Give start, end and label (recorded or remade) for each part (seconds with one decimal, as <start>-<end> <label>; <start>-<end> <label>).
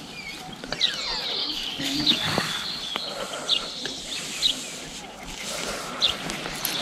0.0-1.4 recorded; 1.4-2.8 remade; 2.8-6.8 recorded